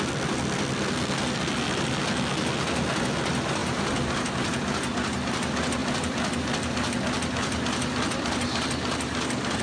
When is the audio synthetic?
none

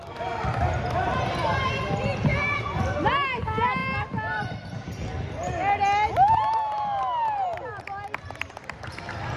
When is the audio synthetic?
2.3-2.8 (vocoder, Vocos)

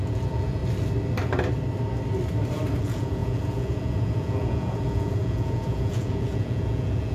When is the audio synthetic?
0.0-0.6 (vocoder, Vocos); 2.8-7.1

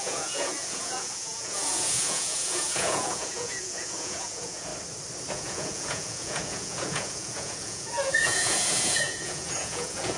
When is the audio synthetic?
0.0-4.7 (vocoder, Vocos); 5.3-10.2

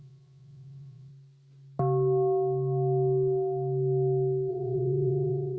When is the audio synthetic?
0.0-1.1 (vocoder, Vocos); 4.5-5.6

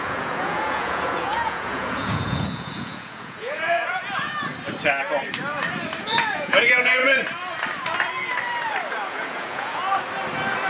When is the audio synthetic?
0.0-4.0 (vocoder, Vocos); 6.0-7.0; 9.1-9.8